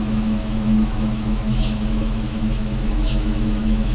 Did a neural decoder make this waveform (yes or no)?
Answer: yes